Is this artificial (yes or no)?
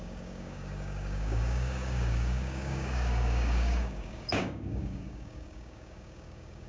yes